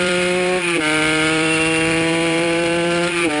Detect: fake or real fake